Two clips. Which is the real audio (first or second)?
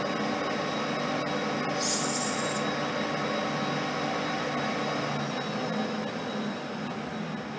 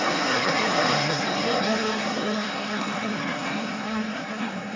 first